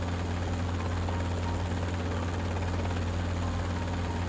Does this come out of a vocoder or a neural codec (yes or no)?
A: no